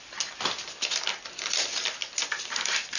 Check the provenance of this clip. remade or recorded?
recorded